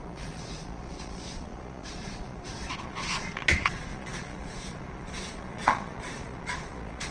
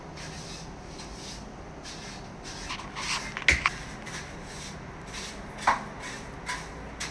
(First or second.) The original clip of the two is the second